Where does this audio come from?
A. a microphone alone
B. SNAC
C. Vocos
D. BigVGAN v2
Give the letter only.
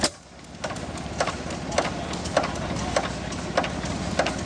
A